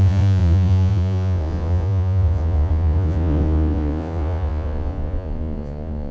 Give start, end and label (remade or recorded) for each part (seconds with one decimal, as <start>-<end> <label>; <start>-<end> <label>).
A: 0.0-6.1 remade